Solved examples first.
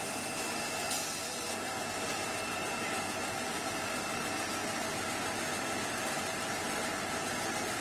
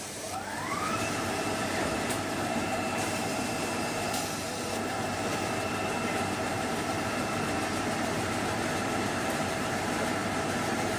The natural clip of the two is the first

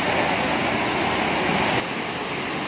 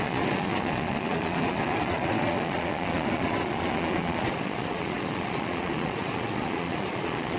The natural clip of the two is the first